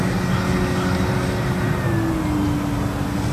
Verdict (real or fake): real